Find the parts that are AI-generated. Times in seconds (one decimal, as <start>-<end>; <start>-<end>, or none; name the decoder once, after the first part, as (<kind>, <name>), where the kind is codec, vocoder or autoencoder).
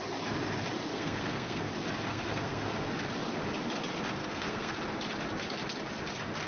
0.9-1.7 (codec, SNAC); 2.1-2.9; 4.2-4.7